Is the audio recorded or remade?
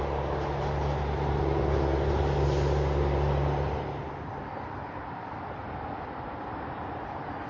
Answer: recorded